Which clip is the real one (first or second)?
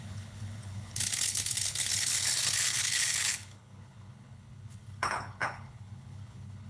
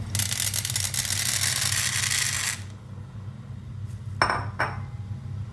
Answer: second